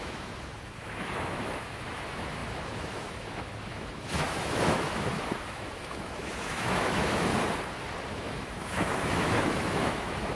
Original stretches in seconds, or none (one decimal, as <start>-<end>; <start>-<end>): 7.3-8.1